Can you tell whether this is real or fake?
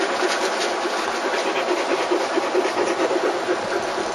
real